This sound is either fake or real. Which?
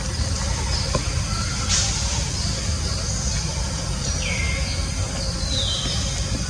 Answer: real